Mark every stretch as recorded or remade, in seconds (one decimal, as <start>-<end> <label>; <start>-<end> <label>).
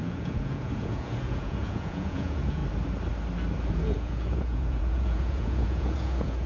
0.0-2.6 remade; 2.6-3.7 recorded; 3.7-6.5 remade